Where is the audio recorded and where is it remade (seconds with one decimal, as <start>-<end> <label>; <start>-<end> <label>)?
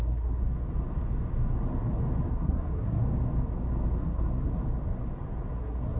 0.0-0.4 remade; 0.4-2.3 recorded; 2.3-3.0 remade; 3.0-4.0 recorded; 4.0-4.6 remade; 4.6-5.6 recorded; 5.6-6.0 remade